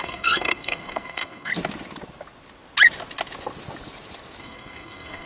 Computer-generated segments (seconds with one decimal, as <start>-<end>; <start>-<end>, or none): 0.0-1.5; 4.4-5.3